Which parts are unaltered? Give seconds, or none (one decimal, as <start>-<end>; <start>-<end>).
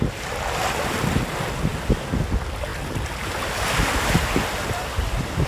0.0-5.5